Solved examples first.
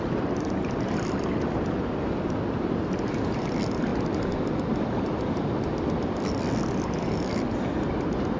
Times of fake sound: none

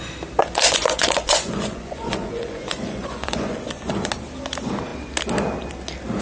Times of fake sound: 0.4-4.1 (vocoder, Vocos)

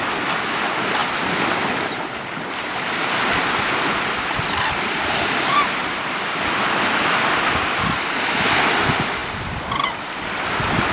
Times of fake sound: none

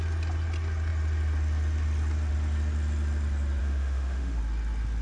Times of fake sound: 3.6-4.4 (autoencoder, DAC-VAE)

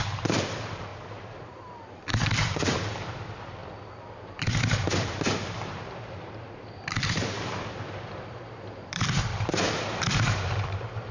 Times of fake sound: 0.0-0.9 (vocoder, BigVGAN v2); 1.9-3.6; 4.2-11.1

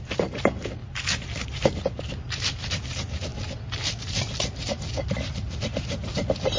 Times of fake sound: none

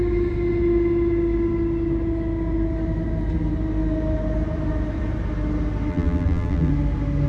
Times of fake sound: 5.9-6.7 (vocoder, BigVGAN v2)

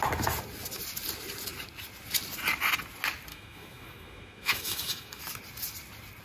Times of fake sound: 3.3-5.2 (autoencoder, DAC-VAE)